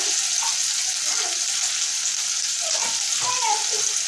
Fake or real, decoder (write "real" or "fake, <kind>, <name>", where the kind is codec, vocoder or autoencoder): real